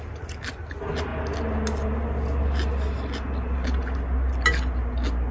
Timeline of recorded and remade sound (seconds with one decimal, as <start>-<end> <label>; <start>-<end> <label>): 0.0-5.3 recorded

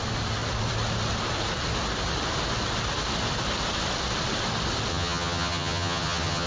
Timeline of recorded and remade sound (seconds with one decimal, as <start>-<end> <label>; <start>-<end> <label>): 0.0-4.9 recorded; 4.9-6.5 remade

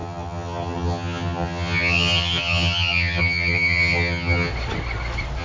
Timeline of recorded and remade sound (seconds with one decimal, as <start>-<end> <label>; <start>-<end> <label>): 0.0-4.5 remade; 4.5-5.4 recorded